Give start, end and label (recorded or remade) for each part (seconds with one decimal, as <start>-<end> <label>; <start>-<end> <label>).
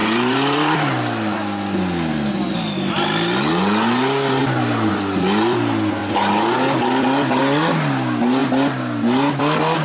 0.0-0.9 remade; 0.9-4.4 recorded; 4.4-4.9 remade; 4.9-9.8 recorded